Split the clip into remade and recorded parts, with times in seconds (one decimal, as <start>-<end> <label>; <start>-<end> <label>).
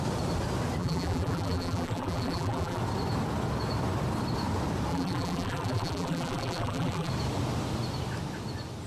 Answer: 0.0-0.8 recorded; 0.8-2.8 remade; 2.8-4.9 recorded; 4.9-7.1 remade; 7.1-8.9 recorded